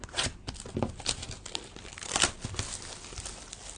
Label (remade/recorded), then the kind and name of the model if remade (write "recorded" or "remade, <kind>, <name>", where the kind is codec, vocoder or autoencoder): recorded